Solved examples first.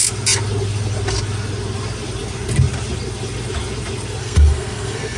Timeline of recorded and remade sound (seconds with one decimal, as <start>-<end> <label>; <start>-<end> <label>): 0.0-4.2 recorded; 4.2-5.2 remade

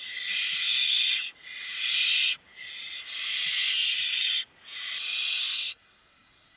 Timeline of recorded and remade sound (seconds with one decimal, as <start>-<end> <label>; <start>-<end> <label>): 0.0-5.4 recorded; 5.4-6.6 remade

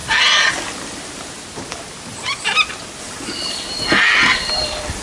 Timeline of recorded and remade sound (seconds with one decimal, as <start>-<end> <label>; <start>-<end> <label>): 0.0-5.0 recorded

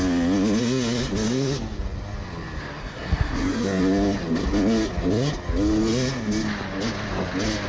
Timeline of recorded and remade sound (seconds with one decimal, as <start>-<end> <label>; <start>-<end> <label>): 0.0-2.8 recorded; 2.8-3.8 remade; 3.8-7.7 recorded

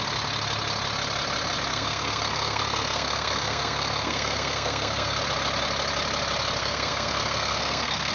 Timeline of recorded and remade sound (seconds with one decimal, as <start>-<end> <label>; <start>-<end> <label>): 0.0-1.7 recorded; 1.7-5.2 remade; 5.2-6.6 recorded; 6.6-8.1 remade

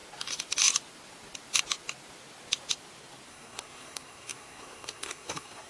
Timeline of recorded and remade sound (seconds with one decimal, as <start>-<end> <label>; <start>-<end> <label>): 0.0-3.3 recorded; 3.3-5.7 remade